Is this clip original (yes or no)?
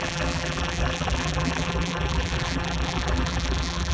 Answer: no